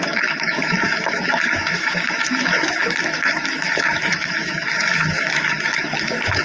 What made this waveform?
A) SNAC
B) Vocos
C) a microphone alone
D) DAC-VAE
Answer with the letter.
D